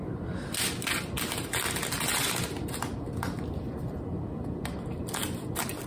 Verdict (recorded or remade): recorded